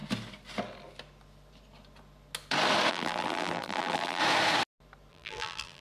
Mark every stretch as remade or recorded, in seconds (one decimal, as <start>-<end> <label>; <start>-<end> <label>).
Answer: 0.0-2.9 recorded; 2.9-4.2 remade; 4.2-5.1 recorded; 5.1-5.8 remade